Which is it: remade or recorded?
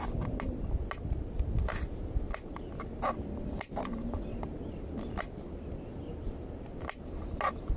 recorded